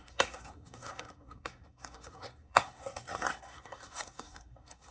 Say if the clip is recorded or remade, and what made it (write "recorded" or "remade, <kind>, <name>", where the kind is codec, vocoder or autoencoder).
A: remade, codec, SNAC